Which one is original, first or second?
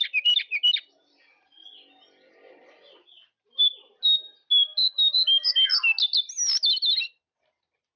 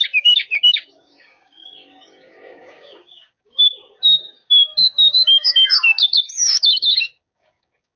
first